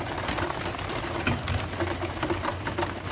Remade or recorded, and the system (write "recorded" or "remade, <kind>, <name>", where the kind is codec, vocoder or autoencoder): recorded